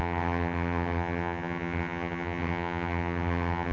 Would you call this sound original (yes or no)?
no